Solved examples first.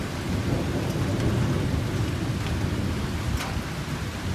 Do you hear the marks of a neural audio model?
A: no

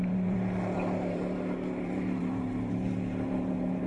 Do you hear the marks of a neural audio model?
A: yes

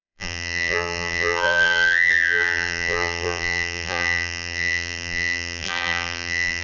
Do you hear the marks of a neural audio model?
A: yes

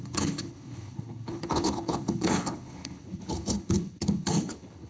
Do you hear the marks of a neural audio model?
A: yes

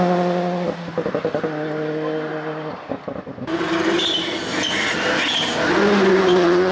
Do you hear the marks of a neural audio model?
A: no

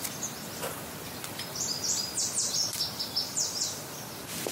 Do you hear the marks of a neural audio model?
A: no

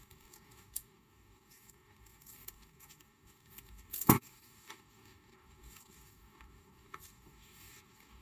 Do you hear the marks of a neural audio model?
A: yes